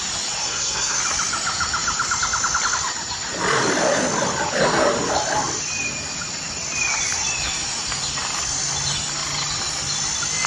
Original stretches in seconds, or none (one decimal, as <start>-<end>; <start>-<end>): 0.0-0.4; 1.0-10.5